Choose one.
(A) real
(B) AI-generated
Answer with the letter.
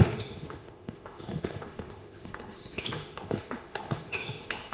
B